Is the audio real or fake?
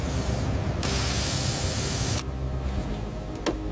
real